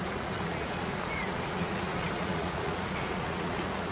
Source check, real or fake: fake